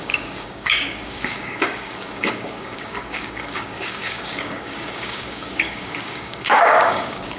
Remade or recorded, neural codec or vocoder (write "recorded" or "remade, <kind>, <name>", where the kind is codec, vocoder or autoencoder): remade, codec, DAC